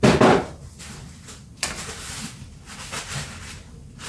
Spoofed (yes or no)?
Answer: no